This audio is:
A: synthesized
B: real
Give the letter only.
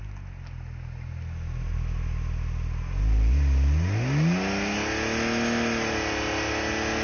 B